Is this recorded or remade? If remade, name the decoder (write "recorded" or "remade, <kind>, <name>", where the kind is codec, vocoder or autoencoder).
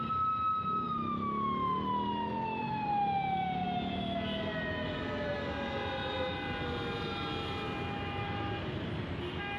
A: recorded